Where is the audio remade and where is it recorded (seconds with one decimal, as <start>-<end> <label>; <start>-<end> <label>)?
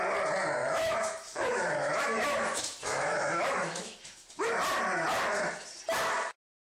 0.0-0.6 recorded; 0.6-4.6 remade; 4.6-6.7 recorded